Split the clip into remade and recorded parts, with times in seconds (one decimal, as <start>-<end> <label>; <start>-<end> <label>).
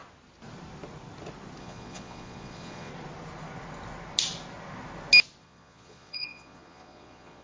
0.0-1.6 recorded; 1.6-2.9 remade; 2.9-5.4 recorded; 5.4-7.4 remade